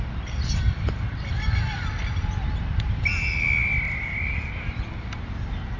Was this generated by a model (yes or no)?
no